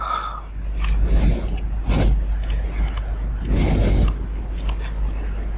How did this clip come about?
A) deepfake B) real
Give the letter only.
B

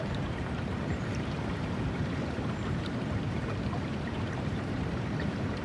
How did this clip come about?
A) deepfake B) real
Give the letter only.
A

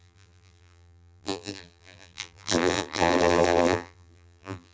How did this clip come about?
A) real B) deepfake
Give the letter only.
B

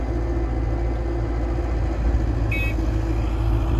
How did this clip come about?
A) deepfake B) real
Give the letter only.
B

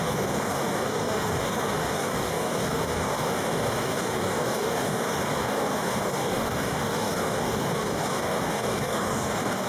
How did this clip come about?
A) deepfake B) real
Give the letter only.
A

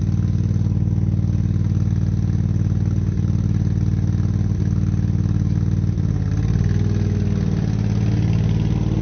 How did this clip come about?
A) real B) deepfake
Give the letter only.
A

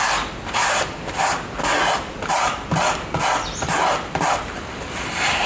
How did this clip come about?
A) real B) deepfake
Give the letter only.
A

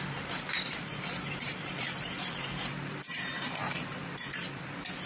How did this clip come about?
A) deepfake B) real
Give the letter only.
A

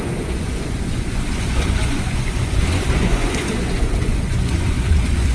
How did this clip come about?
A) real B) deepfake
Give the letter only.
B